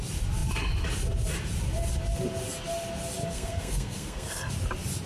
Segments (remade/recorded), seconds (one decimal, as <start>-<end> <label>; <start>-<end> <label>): 0.0-3.2 recorded; 3.2-4.5 remade; 4.5-5.1 recorded